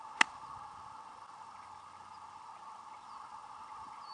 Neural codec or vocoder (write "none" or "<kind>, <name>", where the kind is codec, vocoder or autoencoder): none